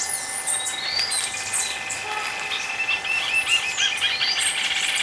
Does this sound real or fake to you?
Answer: real